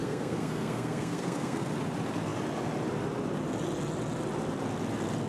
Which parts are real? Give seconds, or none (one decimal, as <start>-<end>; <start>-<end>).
1.7-5.3